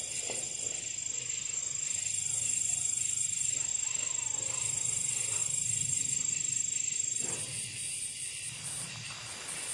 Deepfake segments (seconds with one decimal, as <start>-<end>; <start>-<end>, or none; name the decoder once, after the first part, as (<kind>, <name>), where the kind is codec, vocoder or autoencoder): none